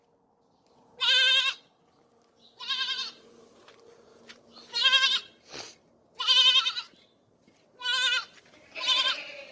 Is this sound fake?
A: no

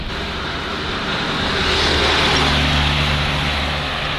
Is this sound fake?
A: no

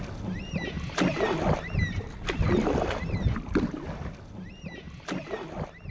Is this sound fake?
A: no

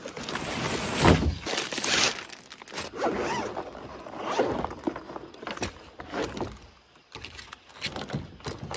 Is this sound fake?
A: no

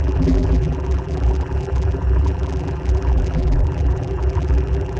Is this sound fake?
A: yes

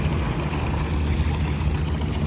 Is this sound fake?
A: no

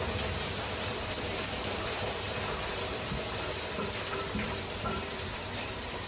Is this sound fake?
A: yes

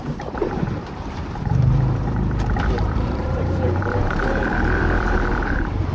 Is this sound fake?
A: yes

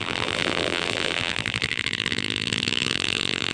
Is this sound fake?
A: yes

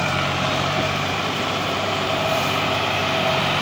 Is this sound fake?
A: yes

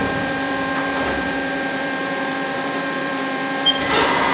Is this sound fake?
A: yes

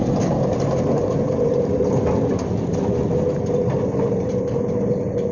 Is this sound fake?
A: yes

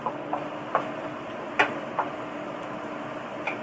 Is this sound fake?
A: yes